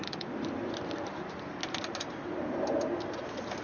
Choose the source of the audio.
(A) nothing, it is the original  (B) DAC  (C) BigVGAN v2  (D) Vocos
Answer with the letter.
A